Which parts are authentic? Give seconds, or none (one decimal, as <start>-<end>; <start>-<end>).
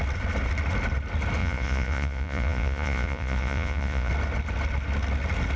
0.0-1.4; 4.1-5.6